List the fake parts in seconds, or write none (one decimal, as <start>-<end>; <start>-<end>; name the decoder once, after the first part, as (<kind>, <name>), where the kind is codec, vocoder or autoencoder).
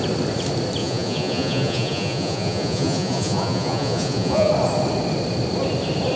0.8-4.5 (vocoder, Vocos)